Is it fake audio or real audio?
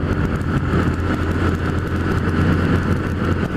real